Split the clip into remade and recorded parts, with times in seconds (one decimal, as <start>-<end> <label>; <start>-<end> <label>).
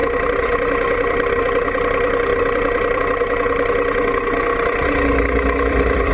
0.0-1.3 remade; 1.3-2.3 recorded; 2.3-3.0 remade; 3.0-4.5 recorded; 4.5-6.1 remade